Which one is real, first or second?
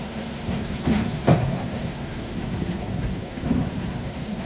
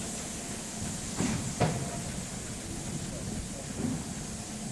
second